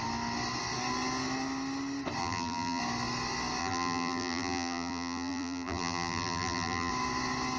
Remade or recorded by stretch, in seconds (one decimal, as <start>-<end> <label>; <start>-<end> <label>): 0.0-2.2 recorded; 2.2-2.8 remade; 2.8-3.6 recorded; 3.6-6.9 remade; 6.9-7.6 recorded

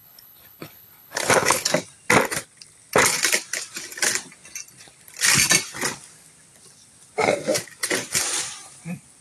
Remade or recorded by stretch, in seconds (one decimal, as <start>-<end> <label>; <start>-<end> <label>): 0.0-1.7 remade; 1.7-9.2 recorded

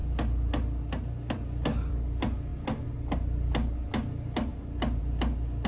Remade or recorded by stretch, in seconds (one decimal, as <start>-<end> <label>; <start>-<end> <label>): 0.0-5.7 recorded

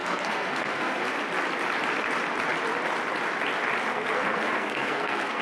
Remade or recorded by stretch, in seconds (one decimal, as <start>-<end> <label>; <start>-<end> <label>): 0.0-1.0 remade; 1.0-3.9 recorded; 3.9-5.4 remade

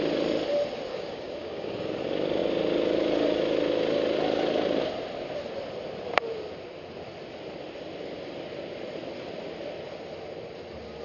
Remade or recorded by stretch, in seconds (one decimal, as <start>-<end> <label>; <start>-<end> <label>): 0.0-0.9 recorded; 0.9-2.0 remade; 2.0-11.0 recorded

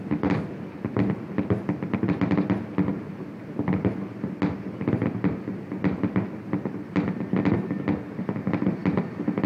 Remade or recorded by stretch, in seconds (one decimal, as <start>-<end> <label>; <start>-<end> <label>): 0.0-9.5 recorded

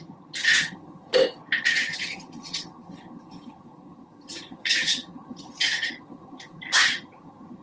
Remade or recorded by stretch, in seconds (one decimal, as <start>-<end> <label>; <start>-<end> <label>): 0.0-1.1 remade; 1.1-1.6 recorded; 1.6-7.6 remade